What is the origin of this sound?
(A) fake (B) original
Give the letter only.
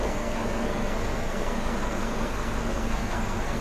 A